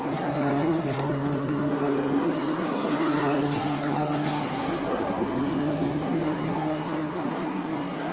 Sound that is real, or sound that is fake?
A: fake